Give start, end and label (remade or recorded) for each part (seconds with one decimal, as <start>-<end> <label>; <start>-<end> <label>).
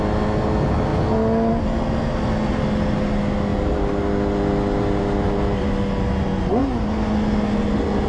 0.0-8.1 recorded